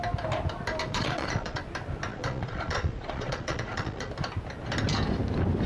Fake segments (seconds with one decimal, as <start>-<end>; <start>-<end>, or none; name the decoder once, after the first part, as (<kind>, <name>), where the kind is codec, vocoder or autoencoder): 0.9-1.6 (vocoder, Vocos); 2.1-4.1